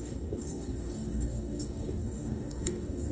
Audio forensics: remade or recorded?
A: remade